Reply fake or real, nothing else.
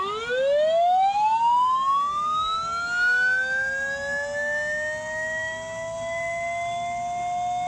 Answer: real